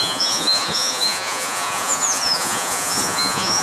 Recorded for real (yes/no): no